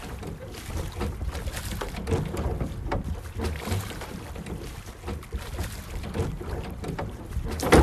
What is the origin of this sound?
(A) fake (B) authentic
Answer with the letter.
B